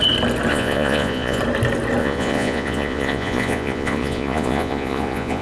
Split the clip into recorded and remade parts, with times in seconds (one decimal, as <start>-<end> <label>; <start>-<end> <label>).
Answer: 0.0-0.5 recorded; 0.5-1.4 remade; 1.4-2.0 recorded; 2.0-5.4 remade